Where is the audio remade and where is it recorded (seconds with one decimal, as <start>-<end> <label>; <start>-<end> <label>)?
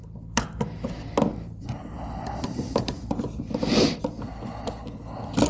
0.0-1.3 recorded; 1.3-3.5 remade; 3.5-5.5 recorded